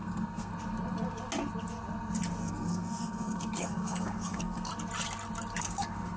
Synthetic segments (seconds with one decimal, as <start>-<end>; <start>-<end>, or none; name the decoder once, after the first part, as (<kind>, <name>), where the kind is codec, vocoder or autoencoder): 0.0-0.5 (codec, SNAC); 2.4-4.7; 5.6-6.2